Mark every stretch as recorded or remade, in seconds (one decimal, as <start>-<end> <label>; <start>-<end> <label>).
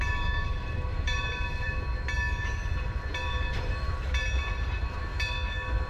0.0-1.9 remade; 1.9-3.3 recorded; 3.3-5.1 remade; 5.1-5.9 recorded